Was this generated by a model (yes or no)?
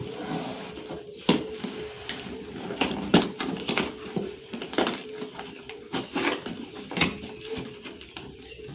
no